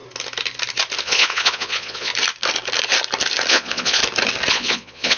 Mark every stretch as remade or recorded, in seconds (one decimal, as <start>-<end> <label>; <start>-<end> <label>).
0.0-1.0 recorded; 1.0-2.1 remade; 2.1-3.5 recorded; 3.5-4.0 remade; 4.0-4.5 recorded; 4.5-5.2 remade